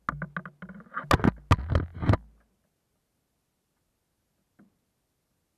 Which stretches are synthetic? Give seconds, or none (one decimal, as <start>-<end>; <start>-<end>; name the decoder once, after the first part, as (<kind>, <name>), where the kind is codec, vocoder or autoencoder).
none